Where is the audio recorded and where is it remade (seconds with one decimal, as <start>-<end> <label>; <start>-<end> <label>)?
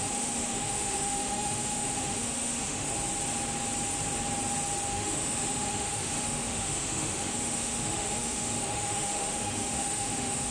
0.0-2.9 remade; 2.9-4.9 recorded; 4.9-10.5 remade